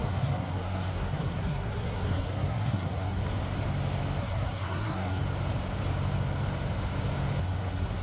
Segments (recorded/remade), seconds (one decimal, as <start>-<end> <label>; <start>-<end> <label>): 0.0-3.2 remade; 3.2-4.2 recorded; 4.2-5.2 remade; 5.2-7.4 recorded; 7.4-8.0 remade